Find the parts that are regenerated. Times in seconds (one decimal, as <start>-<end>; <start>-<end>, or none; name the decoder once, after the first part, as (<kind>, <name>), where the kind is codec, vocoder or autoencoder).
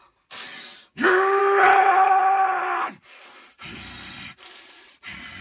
0.8-1.4 (codec, DAC)